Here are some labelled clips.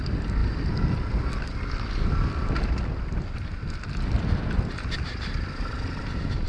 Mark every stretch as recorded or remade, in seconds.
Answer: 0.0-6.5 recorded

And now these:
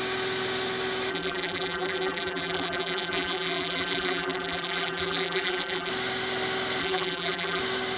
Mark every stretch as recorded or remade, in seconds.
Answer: 0.0-1.1 recorded; 1.1-5.9 remade; 5.9-6.8 recorded; 6.8-7.6 remade; 7.6-8.0 recorded

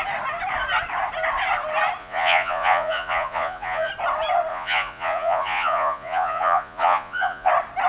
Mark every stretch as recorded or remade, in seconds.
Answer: 0.0-2.0 recorded; 2.0-3.9 remade; 3.9-4.5 recorded; 4.5-7.5 remade; 7.5-7.9 recorded